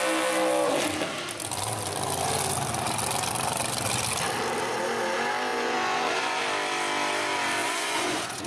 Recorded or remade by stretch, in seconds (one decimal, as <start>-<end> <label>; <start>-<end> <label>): 0.0-5.5 recorded; 5.5-6.4 remade; 6.4-7.6 recorded; 7.6-8.5 remade

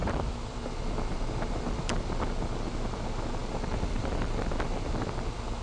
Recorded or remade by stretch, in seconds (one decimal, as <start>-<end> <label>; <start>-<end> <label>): 0.0-1.9 remade; 1.9-5.6 recorded

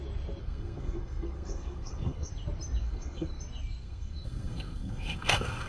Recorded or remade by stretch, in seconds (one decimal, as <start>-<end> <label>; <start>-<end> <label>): 0.0-0.4 recorded; 0.4-2.3 remade; 2.3-2.8 recorded; 2.8-3.4 remade; 3.4-3.8 recorded; 3.8-5.7 remade

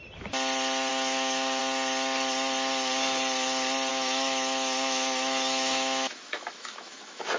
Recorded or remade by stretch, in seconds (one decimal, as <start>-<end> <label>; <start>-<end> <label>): 0.0-0.9 recorded; 0.9-1.6 remade; 1.6-3.9 recorded; 3.9-7.4 remade